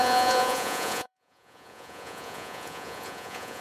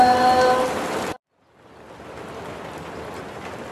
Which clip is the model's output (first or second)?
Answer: first